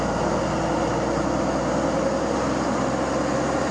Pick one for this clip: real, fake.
real